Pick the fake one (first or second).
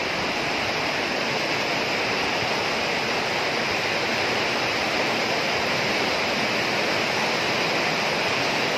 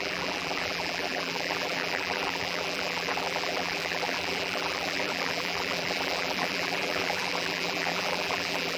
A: second